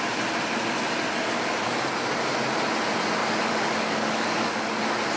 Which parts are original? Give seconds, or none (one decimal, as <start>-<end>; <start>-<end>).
0.0-3.2; 4.7-5.2

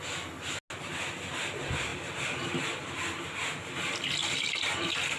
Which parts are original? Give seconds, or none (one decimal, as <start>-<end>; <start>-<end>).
0.0-5.2

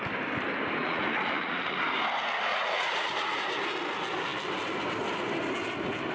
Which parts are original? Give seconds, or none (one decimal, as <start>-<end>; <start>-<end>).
0.0-0.8; 1.9-2.5; 3.5-6.1